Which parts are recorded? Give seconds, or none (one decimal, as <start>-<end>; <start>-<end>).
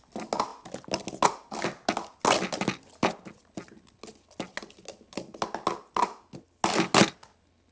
0.0-7.7